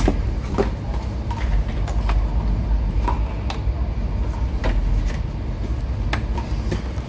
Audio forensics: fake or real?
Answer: real